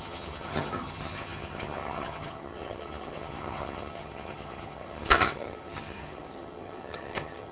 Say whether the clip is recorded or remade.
remade